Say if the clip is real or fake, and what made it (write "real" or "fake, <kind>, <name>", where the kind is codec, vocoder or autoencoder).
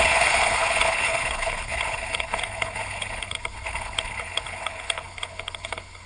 fake, codec, HILCodec